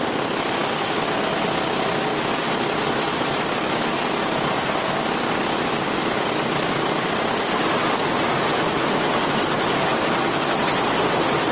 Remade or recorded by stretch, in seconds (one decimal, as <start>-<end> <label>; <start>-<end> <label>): 0.0-11.5 recorded